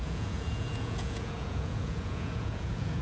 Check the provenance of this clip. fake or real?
fake